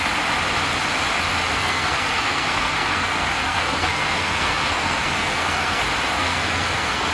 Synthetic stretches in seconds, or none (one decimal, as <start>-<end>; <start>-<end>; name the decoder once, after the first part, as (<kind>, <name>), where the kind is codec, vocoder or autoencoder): 1.5-5.8 (codec, SNAC); 6.2-7.1